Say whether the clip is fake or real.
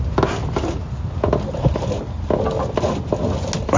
real